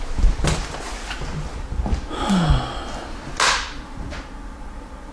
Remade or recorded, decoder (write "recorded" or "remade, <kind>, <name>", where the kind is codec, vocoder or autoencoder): recorded